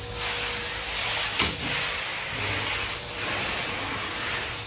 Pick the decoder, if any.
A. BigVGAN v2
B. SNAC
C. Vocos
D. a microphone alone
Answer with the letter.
D